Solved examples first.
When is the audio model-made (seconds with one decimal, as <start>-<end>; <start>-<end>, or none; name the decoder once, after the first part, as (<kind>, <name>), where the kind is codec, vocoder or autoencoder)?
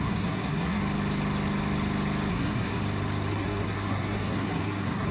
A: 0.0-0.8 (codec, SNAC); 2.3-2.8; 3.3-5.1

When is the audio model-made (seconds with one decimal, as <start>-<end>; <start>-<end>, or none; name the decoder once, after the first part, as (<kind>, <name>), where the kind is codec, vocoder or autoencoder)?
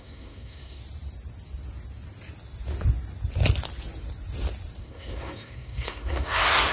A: 0.0-0.8 (codec, SNAC); 4.8-6.7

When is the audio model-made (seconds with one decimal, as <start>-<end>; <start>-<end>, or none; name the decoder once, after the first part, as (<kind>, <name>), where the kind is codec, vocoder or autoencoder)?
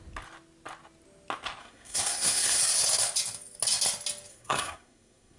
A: 1.6-2.6 (codec, SNAC); 4.3-5.4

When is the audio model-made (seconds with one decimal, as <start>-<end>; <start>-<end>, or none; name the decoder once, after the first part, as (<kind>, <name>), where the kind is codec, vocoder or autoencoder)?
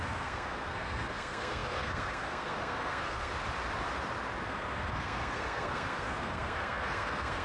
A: 0.0-3.3 (codec, SNAC); 4.4-7.4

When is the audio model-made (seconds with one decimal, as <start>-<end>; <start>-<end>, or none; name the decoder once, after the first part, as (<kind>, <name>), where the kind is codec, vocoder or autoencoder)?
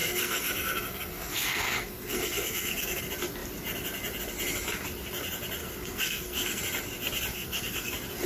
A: 0.0-3.0 (codec, SNAC); 5.6-6.6; 7.3-7.9